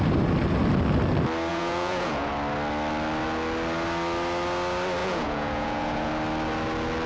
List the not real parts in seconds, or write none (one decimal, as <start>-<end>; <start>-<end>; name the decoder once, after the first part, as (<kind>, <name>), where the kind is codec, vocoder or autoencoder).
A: 1.5-2.3 (vocoder, Vocos); 5.0-6.1